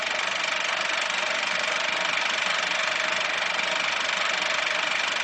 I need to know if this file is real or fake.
fake